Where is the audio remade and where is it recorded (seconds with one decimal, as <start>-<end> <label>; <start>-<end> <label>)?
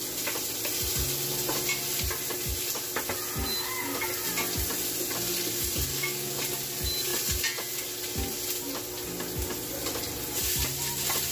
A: 0.0-5.9 recorded; 5.9-6.4 remade; 6.4-11.3 recorded